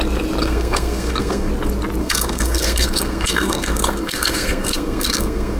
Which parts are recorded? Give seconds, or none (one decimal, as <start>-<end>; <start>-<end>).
0.0-0.4; 1.5-2.0